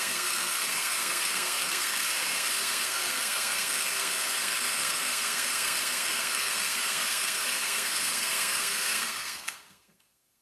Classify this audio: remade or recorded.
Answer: remade